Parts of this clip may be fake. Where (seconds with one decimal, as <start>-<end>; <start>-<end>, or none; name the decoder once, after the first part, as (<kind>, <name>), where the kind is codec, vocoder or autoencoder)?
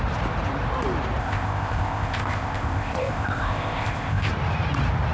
1.2-4.3 (codec, ZipCodec)